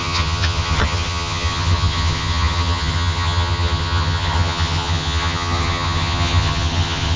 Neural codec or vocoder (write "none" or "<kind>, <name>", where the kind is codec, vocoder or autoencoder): vocoder, HiFi-GAN